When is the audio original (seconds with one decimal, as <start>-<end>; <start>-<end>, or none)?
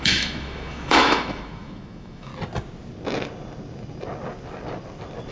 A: 2.3-5.3